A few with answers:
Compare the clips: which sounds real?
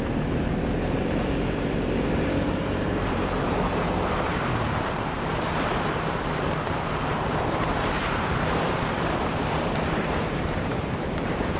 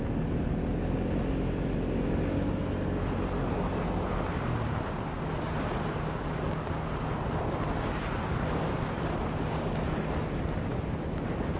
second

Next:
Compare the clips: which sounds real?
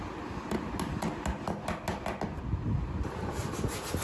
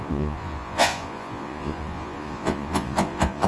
first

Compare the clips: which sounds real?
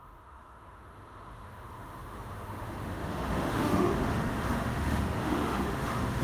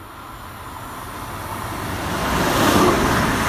second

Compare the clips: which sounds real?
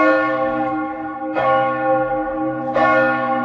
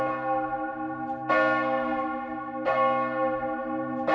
second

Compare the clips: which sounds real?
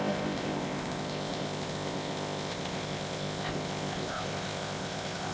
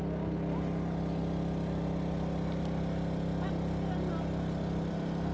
second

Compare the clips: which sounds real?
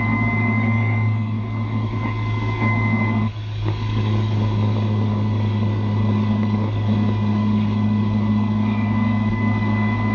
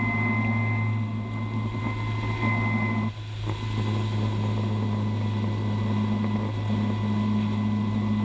second